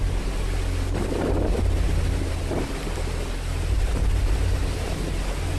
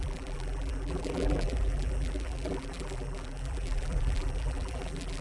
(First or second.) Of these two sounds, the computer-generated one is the second